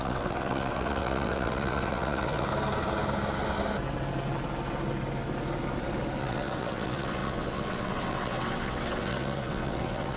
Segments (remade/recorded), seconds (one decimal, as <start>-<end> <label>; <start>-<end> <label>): 0.0-2.5 remade; 2.5-6.2 recorded; 6.2-10.2 remade